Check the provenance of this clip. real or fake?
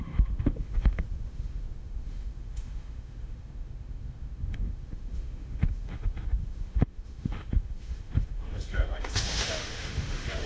fake